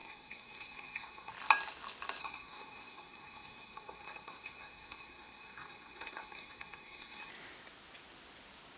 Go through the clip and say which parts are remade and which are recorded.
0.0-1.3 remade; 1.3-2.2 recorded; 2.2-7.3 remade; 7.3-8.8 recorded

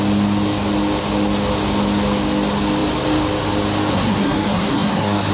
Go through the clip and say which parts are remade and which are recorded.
0.0-3.9 recorded; 3.9-5.3 remade

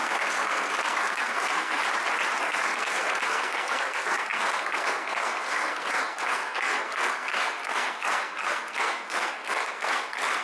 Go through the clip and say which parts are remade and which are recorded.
0.0-1.8 remade; 1.8-2.4 recorded; 2.4-10.4 remade

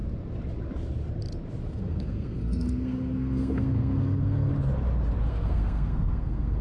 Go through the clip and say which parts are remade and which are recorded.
0.0-1.7 recorded; 1.7-4.5 remade; 4.5-5.3 recorded; 5.3-6.6 remade